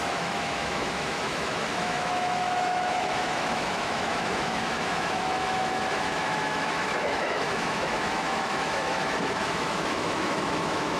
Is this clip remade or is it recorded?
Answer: remade